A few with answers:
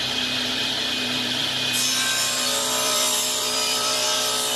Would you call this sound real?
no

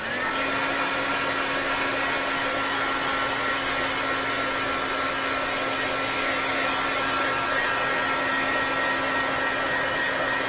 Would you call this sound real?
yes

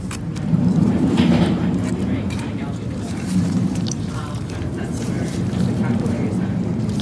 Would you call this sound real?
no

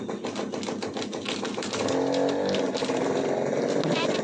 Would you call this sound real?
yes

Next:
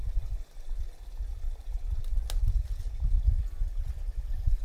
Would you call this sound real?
yes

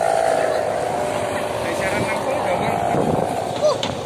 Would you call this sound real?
yes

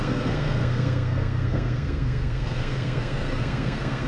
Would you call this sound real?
no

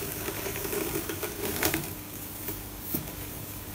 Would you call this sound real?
no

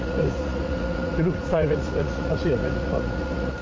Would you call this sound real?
no